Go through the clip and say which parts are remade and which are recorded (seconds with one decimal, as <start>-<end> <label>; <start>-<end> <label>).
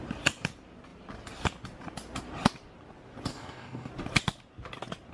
0.0-3.3 recorded; 3.3-3.9 remade; 3.9-5.1 recorded